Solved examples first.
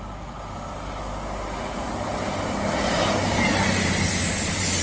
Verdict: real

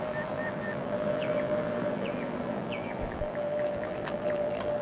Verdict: fake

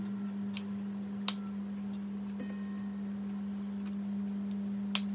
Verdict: real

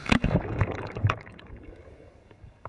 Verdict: fake